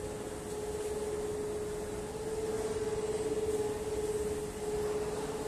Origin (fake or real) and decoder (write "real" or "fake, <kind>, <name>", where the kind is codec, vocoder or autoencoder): real